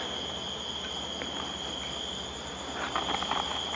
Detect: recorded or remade recorded